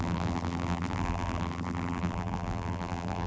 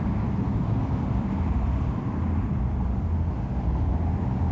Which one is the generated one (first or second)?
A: first